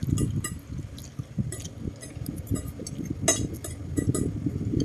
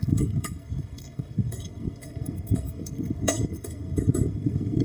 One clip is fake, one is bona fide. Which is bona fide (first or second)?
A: first